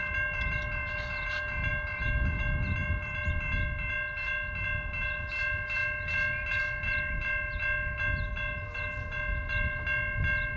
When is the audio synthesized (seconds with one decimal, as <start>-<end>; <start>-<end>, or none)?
none